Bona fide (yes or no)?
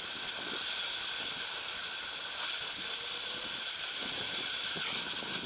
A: yes